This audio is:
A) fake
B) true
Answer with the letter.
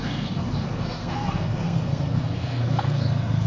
A